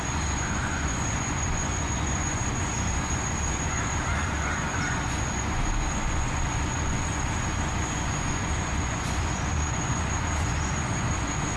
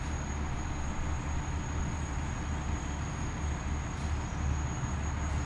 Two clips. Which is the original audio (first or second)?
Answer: second